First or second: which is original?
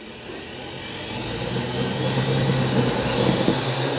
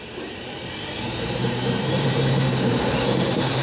first